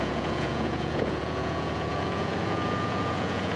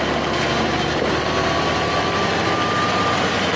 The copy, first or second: first